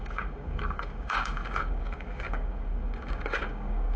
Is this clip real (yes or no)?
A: no